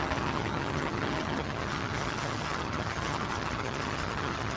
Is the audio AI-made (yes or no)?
yes